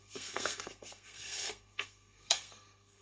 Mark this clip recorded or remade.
remade